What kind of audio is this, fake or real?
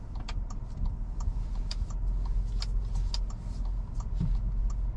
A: real